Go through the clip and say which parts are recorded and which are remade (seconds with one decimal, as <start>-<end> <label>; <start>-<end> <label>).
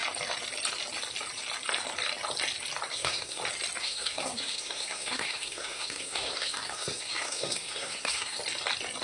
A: 0.0-2.9 recorded; 2.9-3.4 remade; 3.4-3.8 recorded; 3.8-8.4 remade; 8.4-9.0 recorded